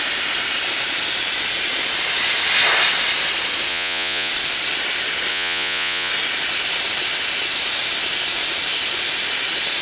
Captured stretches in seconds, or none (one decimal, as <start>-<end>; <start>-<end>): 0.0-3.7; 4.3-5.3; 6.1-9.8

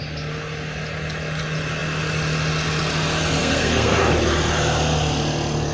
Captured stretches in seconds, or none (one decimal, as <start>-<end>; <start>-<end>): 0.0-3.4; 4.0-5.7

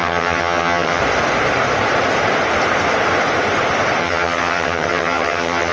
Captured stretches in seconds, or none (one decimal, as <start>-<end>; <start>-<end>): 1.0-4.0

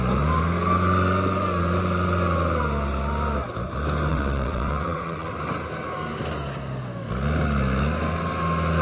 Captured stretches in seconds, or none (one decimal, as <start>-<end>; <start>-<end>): 0.0-4.1; 5.3-8.8

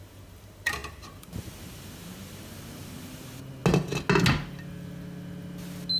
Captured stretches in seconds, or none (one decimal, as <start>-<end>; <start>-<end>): 3.6-6.0

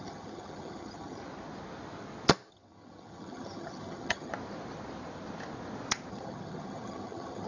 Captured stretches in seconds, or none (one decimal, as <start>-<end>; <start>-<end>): 1.2-2.5; 4.3-6.1

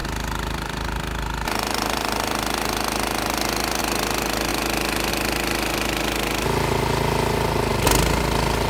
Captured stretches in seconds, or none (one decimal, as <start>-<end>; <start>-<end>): 0.0-8.7

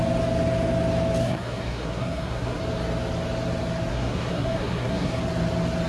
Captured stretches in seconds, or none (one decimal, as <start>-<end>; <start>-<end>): 0.0-1.2; 2.6-3.9; 5.2-5.9